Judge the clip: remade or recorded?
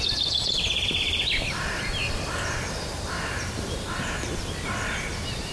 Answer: remade